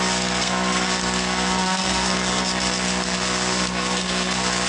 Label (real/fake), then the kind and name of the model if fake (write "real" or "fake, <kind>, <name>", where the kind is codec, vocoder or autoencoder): fake, codec, SNAC